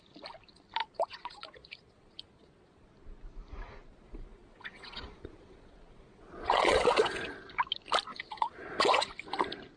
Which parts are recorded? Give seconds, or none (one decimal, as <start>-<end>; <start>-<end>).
0.0-0.8; 2.9-3.9; 7.3-8.1; 9.1-9.8